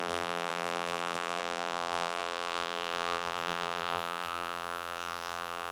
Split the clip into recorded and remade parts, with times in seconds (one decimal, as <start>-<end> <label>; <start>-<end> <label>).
0.0-5.7 remade